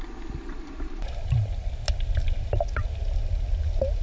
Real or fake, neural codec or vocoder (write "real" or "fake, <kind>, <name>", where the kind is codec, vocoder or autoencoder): real